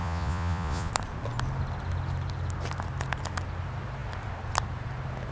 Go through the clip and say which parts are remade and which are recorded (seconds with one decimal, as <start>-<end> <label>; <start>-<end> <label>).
0.0-0.9 remade; 0.9-5.3 recorded